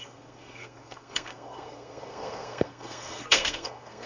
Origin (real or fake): fake